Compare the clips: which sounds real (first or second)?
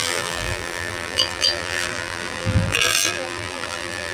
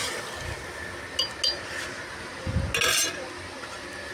second